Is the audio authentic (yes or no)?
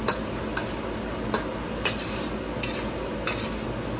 yes